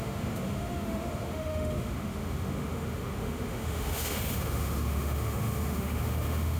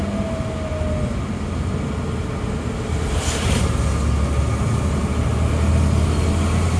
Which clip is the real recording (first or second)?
second